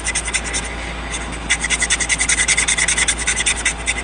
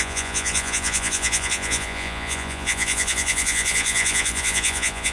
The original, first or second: first